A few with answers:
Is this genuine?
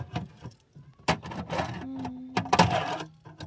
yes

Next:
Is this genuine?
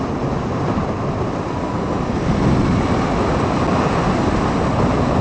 yes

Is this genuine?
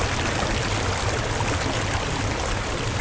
yes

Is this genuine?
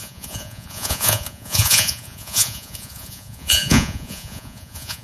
no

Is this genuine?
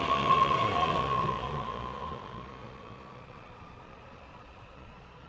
no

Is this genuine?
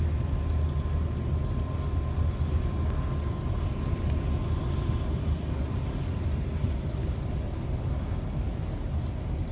yes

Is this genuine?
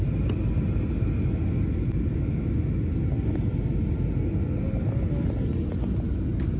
yes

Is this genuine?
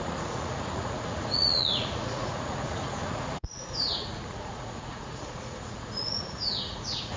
no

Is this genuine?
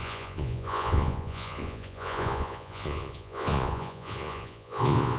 no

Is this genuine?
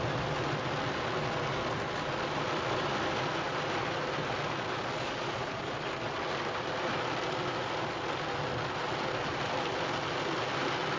yes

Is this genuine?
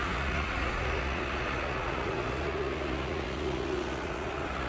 no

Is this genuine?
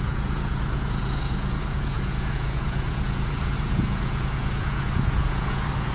no